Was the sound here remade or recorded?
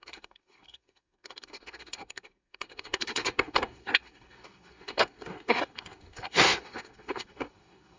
remade